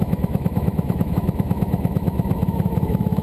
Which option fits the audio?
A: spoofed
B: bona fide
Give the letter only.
A